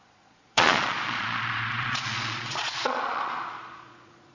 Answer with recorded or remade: remade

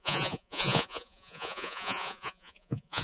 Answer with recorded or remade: remade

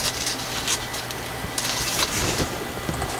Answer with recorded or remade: recorded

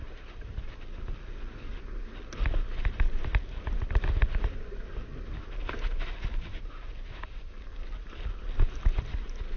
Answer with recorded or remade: recorded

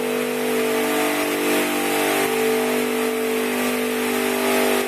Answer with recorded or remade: recorded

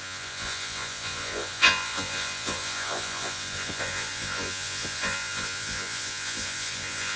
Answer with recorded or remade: remade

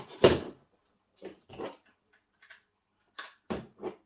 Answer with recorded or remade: recorded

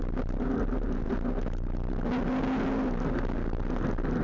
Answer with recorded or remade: recorded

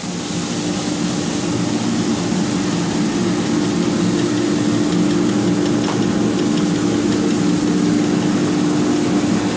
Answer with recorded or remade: recorded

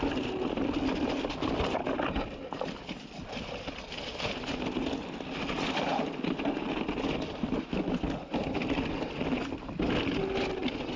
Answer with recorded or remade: recorded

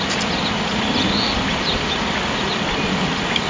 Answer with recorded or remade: recorded